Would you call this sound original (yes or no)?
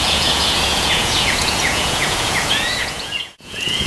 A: no